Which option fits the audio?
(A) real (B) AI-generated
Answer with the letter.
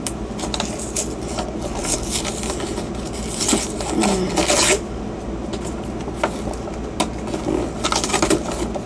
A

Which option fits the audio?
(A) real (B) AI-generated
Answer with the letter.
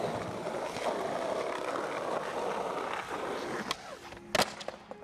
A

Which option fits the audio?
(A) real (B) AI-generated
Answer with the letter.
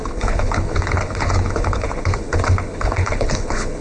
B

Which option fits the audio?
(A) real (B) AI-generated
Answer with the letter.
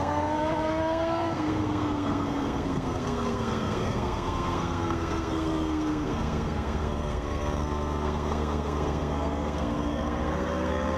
B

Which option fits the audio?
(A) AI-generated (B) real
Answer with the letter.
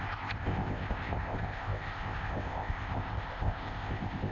A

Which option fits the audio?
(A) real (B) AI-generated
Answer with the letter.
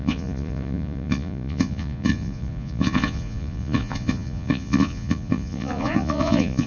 B